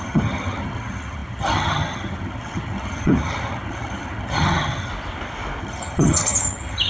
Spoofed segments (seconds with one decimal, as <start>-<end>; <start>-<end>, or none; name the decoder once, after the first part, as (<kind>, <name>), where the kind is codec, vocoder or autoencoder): 0.0-4.9 (vocoder, HiFi-GAN); 5.6-6.9